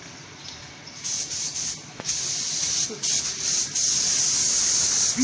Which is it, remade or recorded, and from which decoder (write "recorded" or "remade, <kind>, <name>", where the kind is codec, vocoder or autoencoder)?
recorded